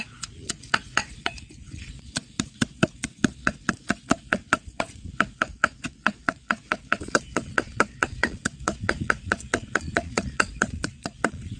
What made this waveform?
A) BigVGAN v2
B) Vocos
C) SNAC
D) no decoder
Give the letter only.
B